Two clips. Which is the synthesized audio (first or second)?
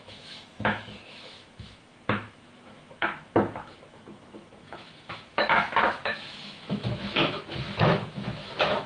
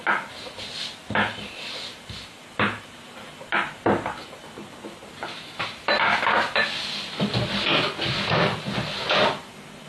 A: first